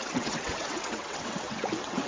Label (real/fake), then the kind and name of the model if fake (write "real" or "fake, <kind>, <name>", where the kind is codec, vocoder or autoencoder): fake, vocoder, WaveNeXt